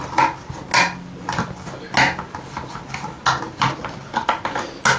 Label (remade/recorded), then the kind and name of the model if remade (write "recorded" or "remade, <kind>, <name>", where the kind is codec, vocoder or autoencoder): recorded